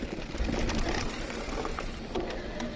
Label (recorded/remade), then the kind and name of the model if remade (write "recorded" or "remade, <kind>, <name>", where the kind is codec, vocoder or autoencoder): recorded